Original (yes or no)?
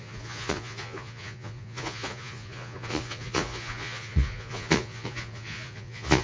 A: no